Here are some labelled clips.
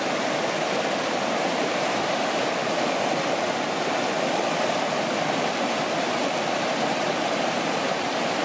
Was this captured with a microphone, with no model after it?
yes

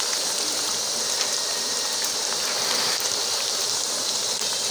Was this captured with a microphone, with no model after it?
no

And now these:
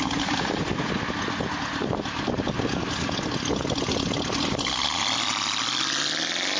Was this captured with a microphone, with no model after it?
yes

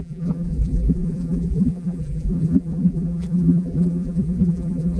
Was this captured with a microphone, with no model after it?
no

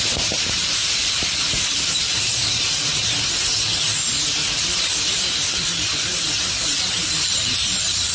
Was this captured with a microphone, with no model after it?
no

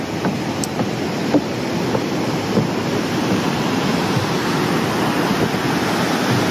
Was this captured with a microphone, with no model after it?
yes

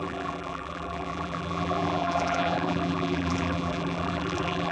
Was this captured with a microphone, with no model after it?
no